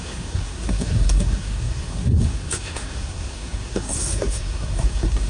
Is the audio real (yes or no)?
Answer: no